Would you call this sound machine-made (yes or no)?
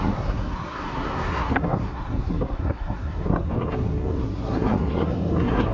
yes